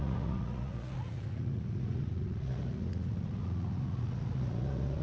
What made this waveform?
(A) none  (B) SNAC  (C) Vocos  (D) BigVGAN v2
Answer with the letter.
C